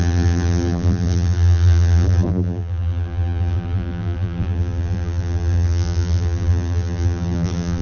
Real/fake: fake